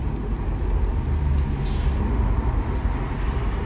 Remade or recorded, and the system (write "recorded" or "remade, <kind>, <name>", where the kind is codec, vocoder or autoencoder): recorded